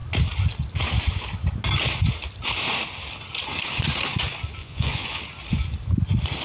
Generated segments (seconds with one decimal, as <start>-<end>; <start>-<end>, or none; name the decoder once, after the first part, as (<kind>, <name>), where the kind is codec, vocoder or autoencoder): 4.6-5.2 (vocoder, Vocos)